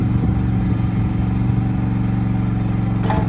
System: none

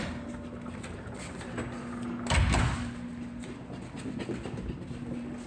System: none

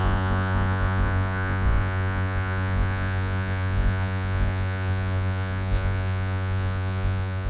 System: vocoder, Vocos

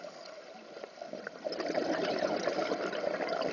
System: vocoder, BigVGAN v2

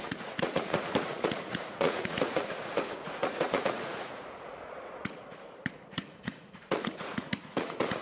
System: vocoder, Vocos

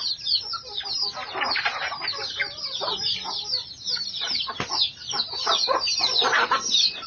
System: none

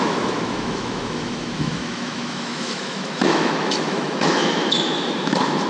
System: autoencoder, DAC-VAE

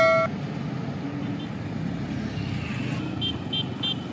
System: none